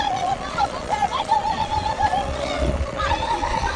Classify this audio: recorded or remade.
remade